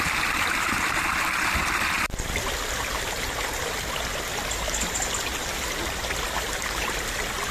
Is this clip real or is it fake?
real